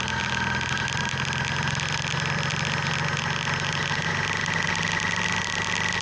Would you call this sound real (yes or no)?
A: yes